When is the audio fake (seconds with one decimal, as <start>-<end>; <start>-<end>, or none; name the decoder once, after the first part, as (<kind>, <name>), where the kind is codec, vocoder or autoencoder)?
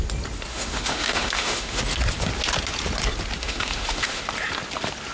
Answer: 0.5-1.8 (autoencoder, DAC-VAE); 3.4-4.2